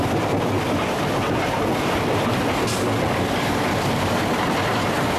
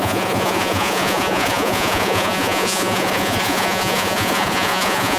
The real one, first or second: first